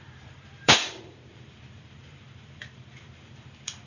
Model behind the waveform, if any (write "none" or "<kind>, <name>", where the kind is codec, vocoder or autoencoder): vocoder, BigVGAN v2